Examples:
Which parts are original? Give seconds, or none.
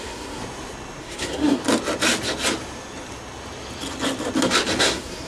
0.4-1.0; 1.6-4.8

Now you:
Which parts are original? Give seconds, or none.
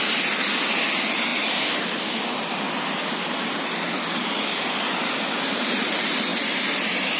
0.0-7.2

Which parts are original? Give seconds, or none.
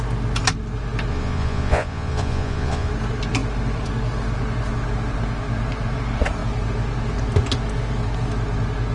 0.0-1.1; 2.9-8.9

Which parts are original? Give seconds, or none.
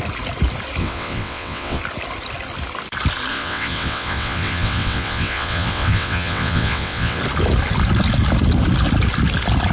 0.0-0.8; 1.8-3.3; 7.2-9.7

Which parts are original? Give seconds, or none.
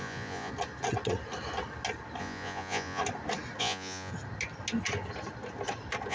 0.5-2.2; 3.0-3.6; 4.1-6.1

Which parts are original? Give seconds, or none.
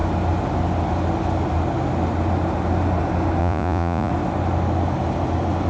0.0-3.4; 4.1-5.7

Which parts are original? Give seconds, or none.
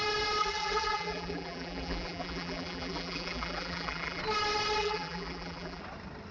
0.0-0.4; 4.2-4.8; 5.8-6.3